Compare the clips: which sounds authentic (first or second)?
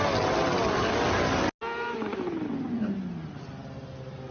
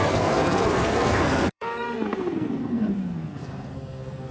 first